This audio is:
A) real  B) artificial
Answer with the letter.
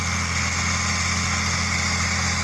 A